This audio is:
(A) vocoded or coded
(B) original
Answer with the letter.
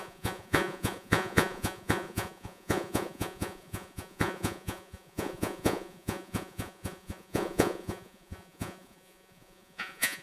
A